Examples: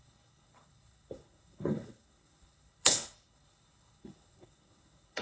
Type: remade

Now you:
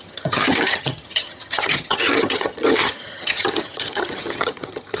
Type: remade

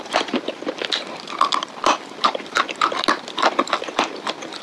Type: remade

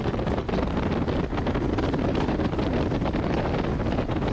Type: recorded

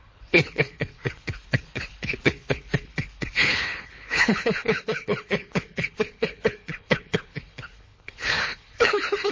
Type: remade